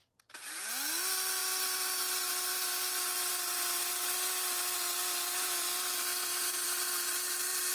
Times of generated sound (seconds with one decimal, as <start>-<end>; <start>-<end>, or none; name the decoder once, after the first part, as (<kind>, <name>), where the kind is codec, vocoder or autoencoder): 0.0-0.7 (vocoder, BigVGAN v2)